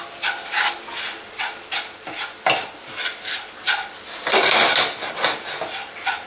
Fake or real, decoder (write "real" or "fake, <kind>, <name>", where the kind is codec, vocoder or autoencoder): real